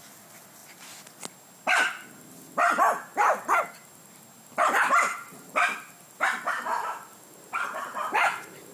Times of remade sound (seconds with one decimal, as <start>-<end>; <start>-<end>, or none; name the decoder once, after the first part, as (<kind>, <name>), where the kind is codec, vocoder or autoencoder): none